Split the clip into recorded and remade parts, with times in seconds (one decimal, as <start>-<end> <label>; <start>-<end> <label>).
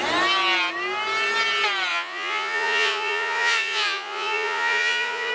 0.0-1.9 recorded; 1.9-5.3 remade